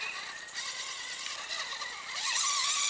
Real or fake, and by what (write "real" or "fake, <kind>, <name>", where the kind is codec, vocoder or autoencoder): real